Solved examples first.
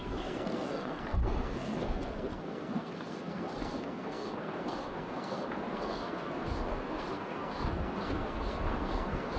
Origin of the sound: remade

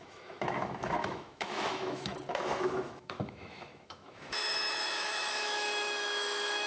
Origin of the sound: remade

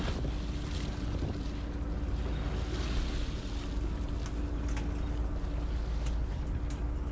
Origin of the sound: recorded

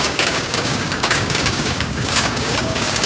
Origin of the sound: remade